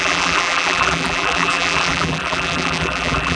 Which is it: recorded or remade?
remade